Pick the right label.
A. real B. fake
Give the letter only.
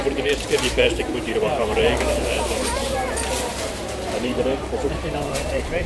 B